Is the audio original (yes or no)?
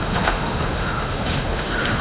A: no